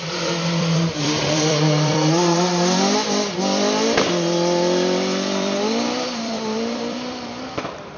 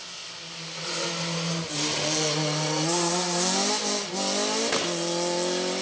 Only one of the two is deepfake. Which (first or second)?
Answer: first